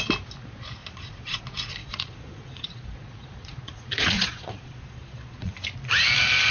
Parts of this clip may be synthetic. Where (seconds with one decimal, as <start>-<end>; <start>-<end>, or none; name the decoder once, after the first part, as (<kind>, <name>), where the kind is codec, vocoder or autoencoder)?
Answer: 0.8-1.4 (vocoder, Vocos); 1.8-5.5